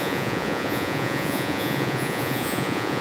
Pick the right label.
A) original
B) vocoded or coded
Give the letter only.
B